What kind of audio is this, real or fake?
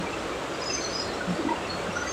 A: real